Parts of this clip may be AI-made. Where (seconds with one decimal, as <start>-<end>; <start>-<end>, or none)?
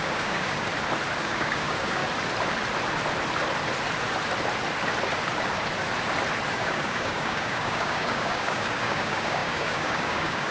0.0-0.7; 1.2-2.0; 6.5-10.5